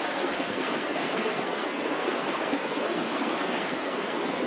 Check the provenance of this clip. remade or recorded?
remade